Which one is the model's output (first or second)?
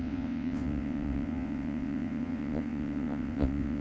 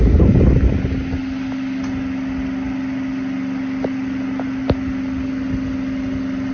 first